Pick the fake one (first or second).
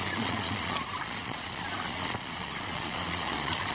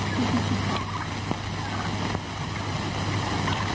first